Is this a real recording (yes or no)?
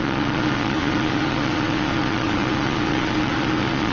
no